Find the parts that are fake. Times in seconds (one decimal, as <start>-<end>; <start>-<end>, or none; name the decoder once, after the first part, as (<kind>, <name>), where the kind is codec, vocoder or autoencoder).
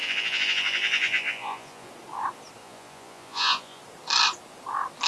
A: 0.0-1.9 (vocoder, Vocos); 2.6-3.8